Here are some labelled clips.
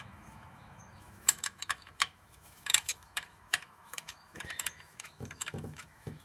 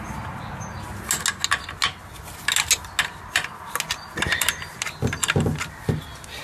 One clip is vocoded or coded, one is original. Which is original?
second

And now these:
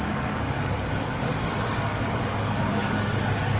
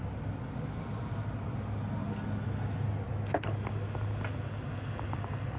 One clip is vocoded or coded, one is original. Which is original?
second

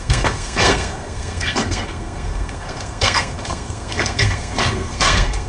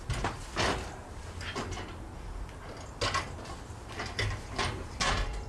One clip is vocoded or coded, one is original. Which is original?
second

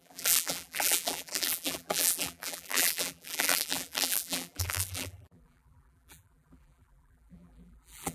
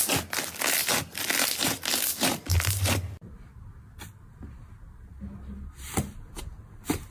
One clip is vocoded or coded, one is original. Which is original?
second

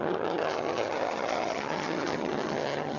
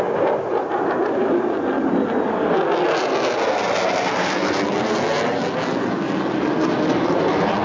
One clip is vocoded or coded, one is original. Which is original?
second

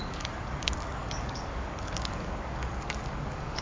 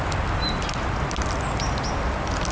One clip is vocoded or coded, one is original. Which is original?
second